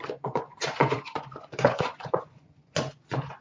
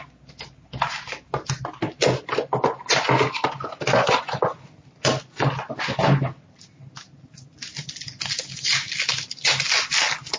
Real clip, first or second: second